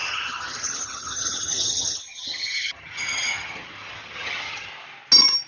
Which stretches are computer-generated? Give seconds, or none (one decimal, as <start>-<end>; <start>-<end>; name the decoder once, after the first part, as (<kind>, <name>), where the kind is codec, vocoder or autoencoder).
0.0-4.7 (vocoder, HiFi-GAN)